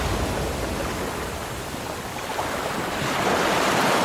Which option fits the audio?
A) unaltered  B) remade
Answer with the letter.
A